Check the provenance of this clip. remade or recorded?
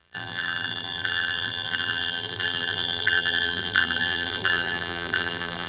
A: remade